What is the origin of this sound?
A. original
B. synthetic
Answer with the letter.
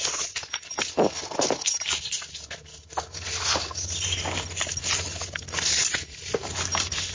A